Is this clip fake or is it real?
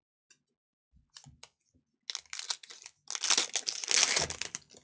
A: real